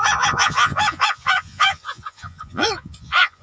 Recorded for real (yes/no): no